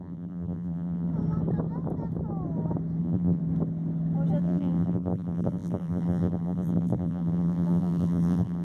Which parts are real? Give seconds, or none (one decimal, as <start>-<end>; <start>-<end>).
1.1-3.0; 3.4-4.4